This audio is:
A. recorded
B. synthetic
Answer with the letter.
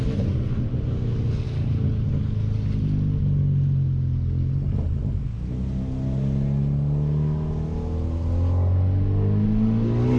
A